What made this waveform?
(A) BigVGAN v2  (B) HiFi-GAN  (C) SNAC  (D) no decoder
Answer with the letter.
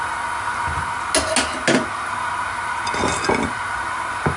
D